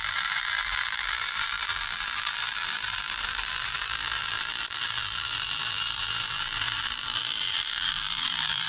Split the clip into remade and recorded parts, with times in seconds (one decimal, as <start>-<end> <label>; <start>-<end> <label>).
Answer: 0.0-8.7 remade